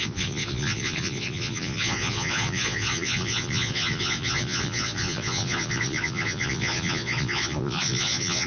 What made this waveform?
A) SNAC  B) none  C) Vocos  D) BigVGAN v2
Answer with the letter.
C